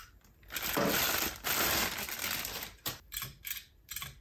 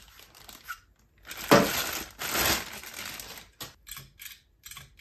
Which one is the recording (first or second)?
second